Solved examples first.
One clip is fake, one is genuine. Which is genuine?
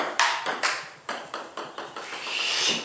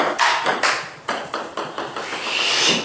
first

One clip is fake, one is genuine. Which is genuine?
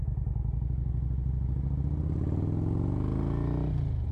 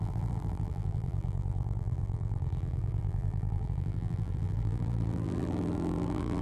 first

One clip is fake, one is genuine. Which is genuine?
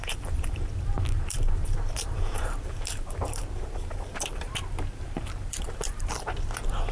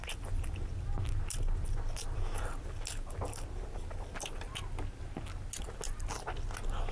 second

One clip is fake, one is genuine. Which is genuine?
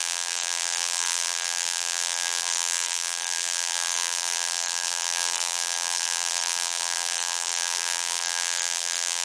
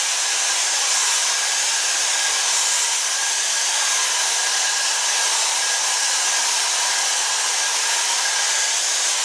second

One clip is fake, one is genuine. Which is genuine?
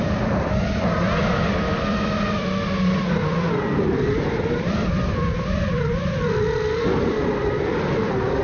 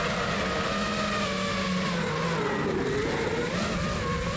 second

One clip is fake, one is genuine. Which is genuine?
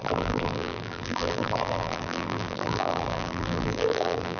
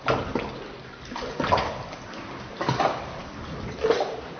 second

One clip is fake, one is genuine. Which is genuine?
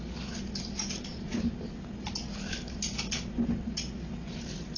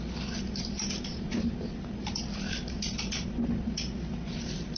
first